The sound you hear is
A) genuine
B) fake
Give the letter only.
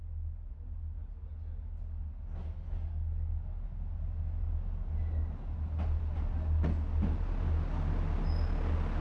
A